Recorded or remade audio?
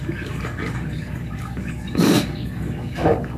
remade